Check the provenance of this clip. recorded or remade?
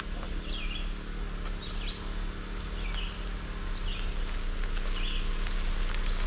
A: recorded